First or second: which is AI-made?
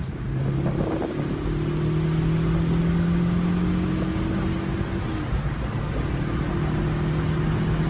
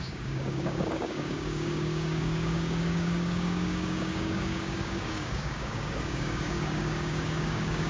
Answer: second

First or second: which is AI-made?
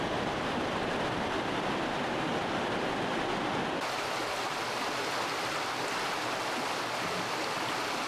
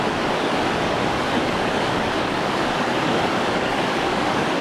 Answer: second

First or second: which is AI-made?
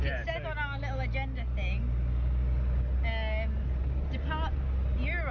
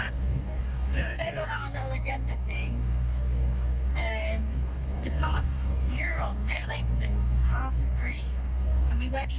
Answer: second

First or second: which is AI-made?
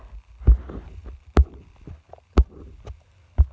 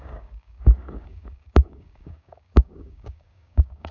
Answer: second